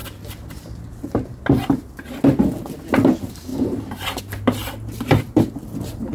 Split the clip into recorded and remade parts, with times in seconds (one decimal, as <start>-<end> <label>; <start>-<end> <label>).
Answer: 0.0-6.1 recorded